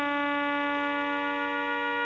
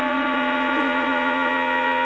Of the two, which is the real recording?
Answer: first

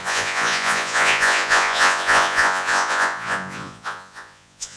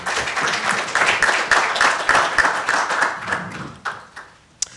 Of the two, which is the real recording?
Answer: second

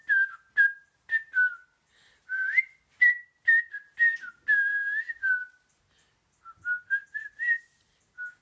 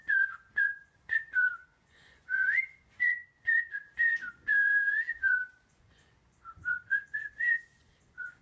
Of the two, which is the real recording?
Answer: first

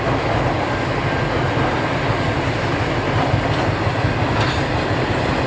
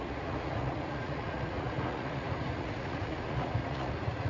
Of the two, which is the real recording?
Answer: first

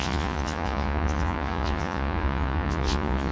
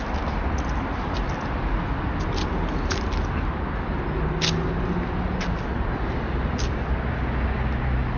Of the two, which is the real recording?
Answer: second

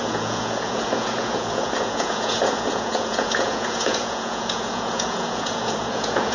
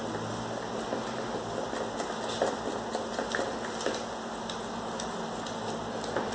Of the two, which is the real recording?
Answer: second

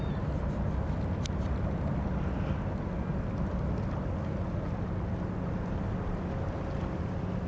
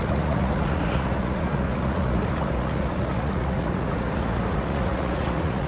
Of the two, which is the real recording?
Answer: first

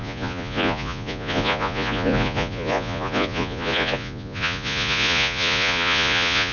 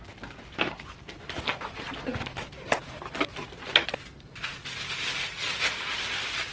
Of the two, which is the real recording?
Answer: second